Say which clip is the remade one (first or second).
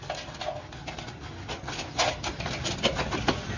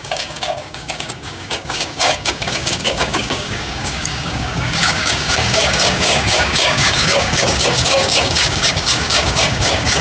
second